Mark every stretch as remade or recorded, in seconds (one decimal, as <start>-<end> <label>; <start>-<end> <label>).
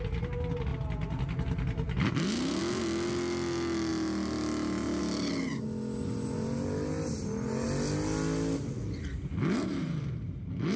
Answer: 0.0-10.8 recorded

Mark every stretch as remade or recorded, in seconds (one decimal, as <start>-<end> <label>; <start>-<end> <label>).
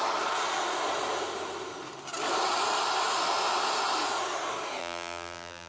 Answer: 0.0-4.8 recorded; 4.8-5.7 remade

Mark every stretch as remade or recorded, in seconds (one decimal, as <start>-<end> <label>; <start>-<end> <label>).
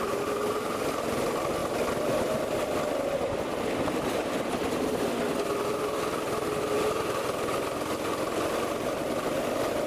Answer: 0.0-9.9 recorded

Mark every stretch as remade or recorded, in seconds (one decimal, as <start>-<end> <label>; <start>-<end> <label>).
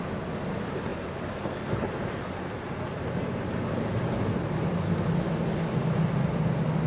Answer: 0.0-6.9 recorded